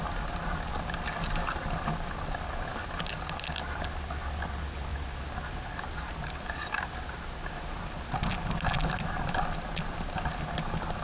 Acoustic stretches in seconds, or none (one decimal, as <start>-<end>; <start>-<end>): 0.0-11.0